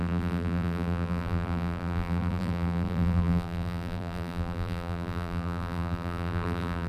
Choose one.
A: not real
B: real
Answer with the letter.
A